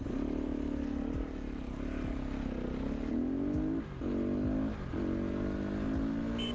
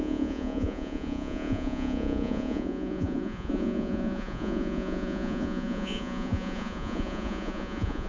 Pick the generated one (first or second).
second